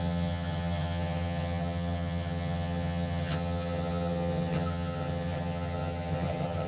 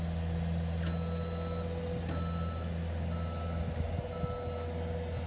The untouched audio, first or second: second